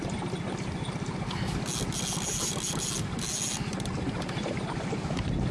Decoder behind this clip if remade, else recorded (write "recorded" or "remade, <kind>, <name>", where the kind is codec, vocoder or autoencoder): recorded